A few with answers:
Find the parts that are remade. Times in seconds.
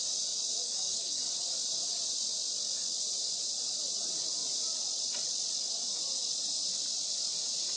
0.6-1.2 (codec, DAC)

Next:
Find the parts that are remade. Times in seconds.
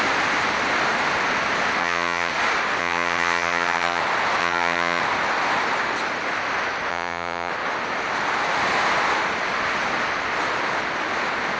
1.8-2.3 (vocoder, HiFi-GAN); 2.8-4.0; 4.4-5.0; 6.9-7.5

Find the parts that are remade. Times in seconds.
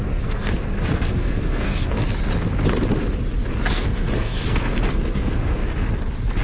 0.0-2.0 (codec, SNAC); 3.7-5.6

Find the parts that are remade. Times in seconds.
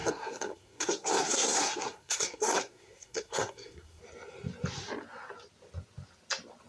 0.0-4.0 (codec, SNAC)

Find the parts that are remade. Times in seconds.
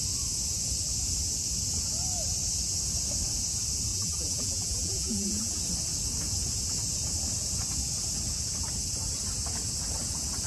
3.9-5.6 (vocoder, BigVGAN v2)